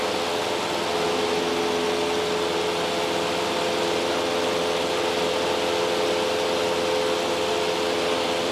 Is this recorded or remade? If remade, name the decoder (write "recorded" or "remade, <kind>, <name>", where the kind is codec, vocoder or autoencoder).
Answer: recorded